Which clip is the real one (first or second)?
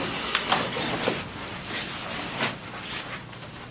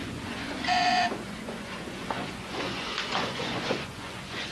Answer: first